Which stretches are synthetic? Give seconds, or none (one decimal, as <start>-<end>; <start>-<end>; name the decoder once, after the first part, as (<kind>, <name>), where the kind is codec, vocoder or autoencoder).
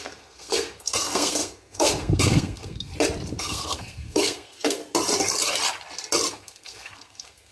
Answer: 0.0-2.9 (codec, SNAC); 3.4-4.8; 6.3-7.5